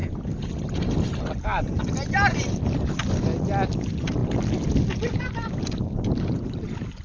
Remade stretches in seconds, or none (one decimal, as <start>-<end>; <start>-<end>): none